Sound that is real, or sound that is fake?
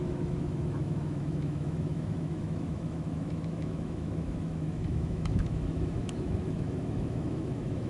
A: fake